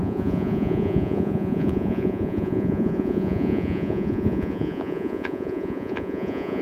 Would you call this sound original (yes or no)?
no